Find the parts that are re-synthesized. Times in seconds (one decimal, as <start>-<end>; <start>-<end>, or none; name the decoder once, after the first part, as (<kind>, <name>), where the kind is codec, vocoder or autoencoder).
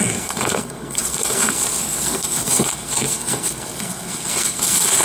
0.0-5.0 (codec, SNAC)